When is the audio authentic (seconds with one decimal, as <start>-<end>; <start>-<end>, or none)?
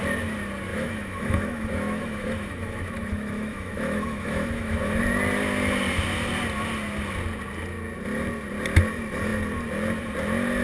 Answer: 0.0-0.7; 5.0-10.6